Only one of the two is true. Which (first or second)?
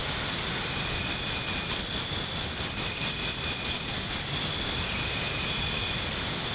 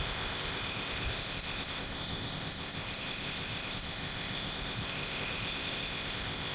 first